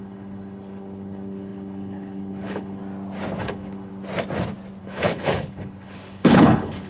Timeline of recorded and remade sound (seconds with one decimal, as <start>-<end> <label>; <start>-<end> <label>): 0.0-2.8 remade; 2.8-3.4 recorded; 3.4-3.9 remade; 3.9-4.8 recorded; 4.8-6.9 remade